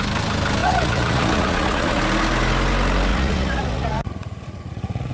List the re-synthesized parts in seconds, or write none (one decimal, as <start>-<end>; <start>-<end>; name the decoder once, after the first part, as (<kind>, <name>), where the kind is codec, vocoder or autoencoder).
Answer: 0.6-2.0 (vocoder, Vocos); 3.1-5.1